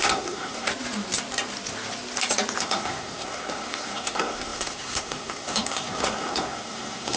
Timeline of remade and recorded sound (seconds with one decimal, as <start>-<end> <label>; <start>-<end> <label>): 0.0-0.7 remade; 0.7-2.6 recorded; 2.6-7.2 remade

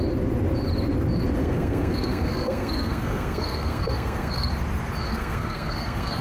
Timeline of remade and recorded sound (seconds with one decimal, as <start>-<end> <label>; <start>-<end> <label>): 0.0-1.4 recorded; 1.4-4.5 remade; 4.5-5.1 recorded; 5.1-6.2 remade

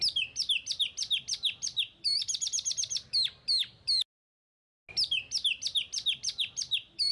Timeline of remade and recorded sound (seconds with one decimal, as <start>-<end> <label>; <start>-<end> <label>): 0.0-7.1 recorded